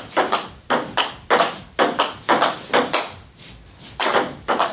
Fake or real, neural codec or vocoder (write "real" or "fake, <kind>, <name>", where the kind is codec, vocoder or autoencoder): real